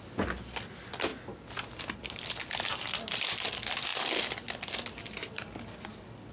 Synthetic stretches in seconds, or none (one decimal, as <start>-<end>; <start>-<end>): none